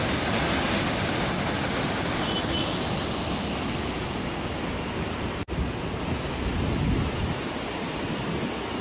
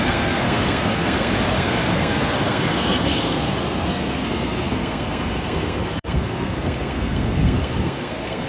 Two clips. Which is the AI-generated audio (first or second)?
second